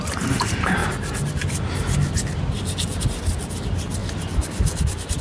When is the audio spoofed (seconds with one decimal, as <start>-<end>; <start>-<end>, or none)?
none